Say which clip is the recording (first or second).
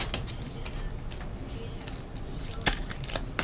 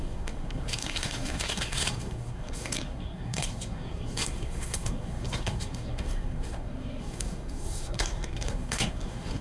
first